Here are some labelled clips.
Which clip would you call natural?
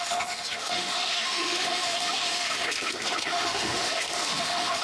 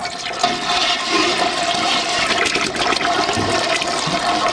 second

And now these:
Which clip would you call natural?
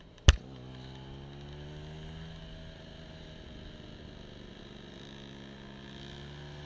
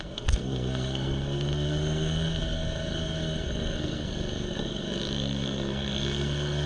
first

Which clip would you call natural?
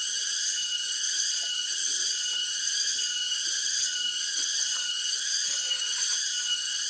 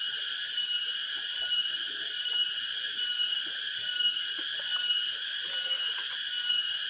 second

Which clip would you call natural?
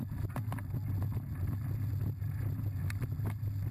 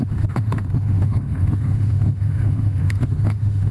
first